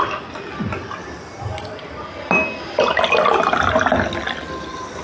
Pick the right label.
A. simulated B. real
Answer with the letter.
B